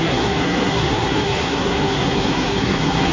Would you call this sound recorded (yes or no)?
no